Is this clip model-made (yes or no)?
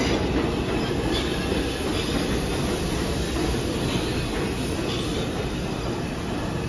no